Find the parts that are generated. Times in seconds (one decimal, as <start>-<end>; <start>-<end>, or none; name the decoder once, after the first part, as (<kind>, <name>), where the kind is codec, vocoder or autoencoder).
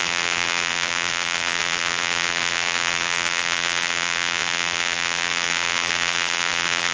0.0-6.9 (vocoder, BigVGAN v2)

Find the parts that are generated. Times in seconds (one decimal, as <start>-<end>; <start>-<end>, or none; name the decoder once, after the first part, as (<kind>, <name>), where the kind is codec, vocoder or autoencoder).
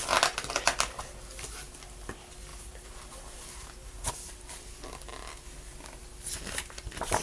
2.5-4.1 (vocoder, BigVGAN v2)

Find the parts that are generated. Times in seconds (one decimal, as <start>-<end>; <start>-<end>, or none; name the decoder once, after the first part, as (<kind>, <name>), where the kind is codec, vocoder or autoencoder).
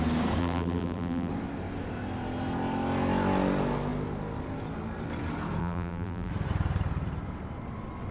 0.4-1.3 (vocoder, BigVGAN v2); 5.6-6.3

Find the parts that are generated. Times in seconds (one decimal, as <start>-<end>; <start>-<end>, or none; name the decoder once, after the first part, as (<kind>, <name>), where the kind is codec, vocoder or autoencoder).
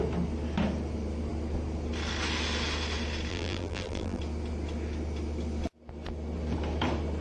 3.3-4.2 (vocoder, BigVGAN v2)